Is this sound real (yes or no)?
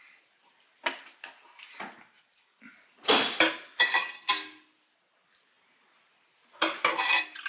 yes